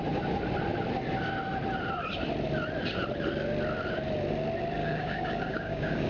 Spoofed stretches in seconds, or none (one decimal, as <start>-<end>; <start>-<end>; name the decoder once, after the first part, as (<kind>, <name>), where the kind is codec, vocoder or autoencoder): 4.8-6.1 (codec, DAC)